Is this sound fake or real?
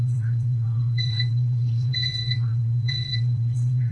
fake